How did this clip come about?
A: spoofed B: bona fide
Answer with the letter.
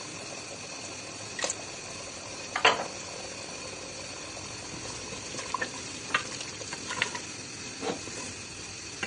B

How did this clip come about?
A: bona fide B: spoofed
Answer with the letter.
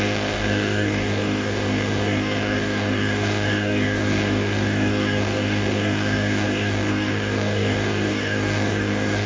B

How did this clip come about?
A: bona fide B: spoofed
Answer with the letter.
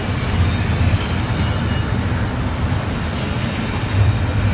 A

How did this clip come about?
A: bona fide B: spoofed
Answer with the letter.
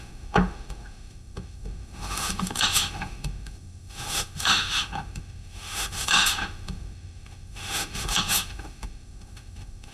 B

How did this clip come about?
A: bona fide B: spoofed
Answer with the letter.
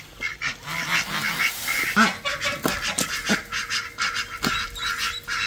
A